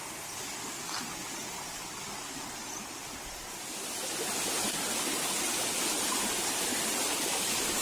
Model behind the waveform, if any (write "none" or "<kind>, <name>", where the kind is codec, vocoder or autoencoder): none